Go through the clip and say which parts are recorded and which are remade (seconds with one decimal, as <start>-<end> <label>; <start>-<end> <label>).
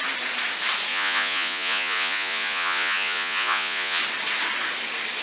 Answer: 0.0-0.9 recorded; 0.9-4.0 remade; 4.0-5.2 recorded